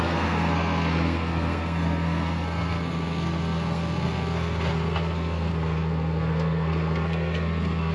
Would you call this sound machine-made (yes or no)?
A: yes